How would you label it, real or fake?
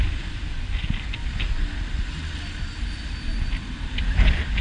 real